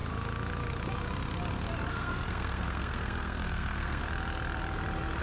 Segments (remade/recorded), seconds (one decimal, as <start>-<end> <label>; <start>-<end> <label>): 0.0-1.9 recorded; 1.9-4.0 remade; 4.0-5.2 recorded